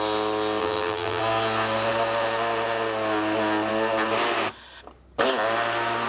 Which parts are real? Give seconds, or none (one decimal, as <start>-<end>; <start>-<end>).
0.0-0.6; 1.2-6.1